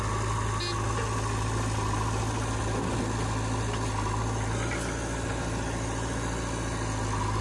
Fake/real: real